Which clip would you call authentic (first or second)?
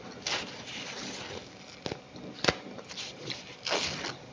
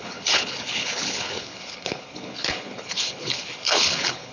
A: first